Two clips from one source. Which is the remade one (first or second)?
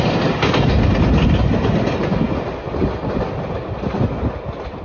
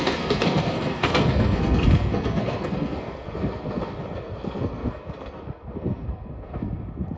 second